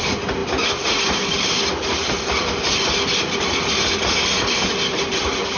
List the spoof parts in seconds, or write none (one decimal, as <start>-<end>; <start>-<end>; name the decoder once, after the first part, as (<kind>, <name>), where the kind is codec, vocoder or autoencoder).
none